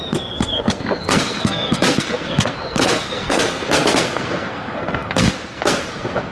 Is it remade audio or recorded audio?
remade